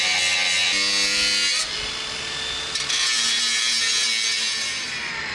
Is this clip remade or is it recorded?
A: recorded